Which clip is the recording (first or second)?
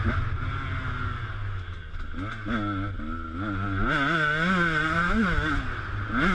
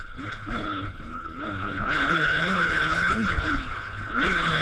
first